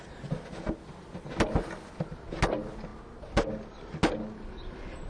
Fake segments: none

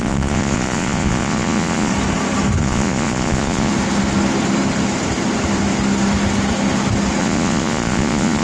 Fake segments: 0.0-1.9 (vocoder, Vocos); 2.6-3.7; 7.2-8.4

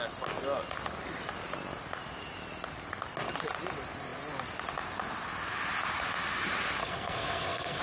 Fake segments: 6.8-7.8 (codec, SNAC)

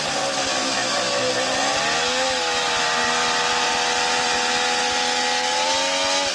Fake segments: 0.6-1.3 (autoencoder, DAC-VAE)

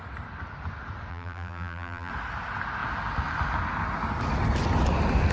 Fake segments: 1.1-2.1 (vocoder, BigVGAN v2)

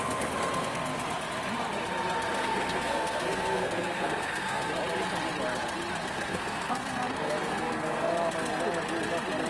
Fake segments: 0.0-0.9 (codec, SNAC); 2.4-4.7; 6.0-8.1